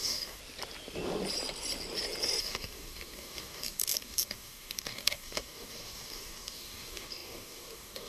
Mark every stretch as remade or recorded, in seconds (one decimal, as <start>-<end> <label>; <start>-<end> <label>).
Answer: 0.0-0.4 remade; 0.4-2.4 recorded; 2.4-8.1 remade